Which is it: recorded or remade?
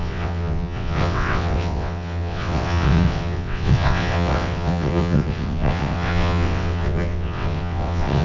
remade